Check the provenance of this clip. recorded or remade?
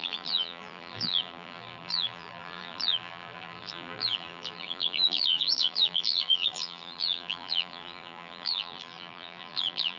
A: remade